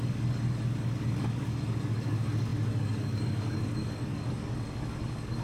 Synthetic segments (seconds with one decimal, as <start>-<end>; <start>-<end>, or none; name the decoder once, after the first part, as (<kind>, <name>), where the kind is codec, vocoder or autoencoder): 0.0-5.4 (codec, DAC)